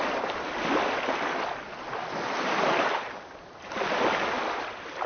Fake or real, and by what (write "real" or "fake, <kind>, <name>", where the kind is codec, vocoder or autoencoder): real